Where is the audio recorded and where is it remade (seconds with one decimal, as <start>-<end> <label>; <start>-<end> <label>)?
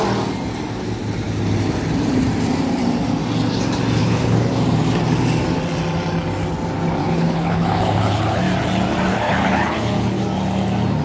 0.0-4.0 recorded; 4.0-4.5 remade; 4.5-7.0 recorded; 7.0-8.4 remade; 8.4-9.1 recorded; 9.1-10.2 remade; 10.2-11.0 recorded